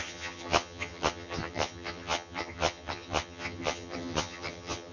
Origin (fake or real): fake